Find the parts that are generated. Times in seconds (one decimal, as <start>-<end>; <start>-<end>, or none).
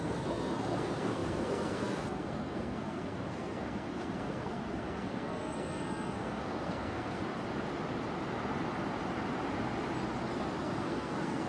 0.0-7.3; 10.6-11.5